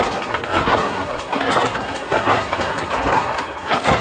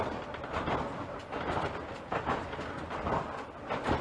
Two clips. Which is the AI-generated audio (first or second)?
first